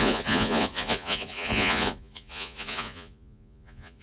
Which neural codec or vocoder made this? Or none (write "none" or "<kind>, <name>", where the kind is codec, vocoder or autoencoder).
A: vocoder, Vocos